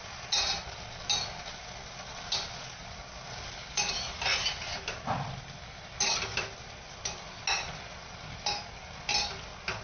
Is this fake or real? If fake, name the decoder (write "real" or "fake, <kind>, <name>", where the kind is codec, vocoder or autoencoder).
real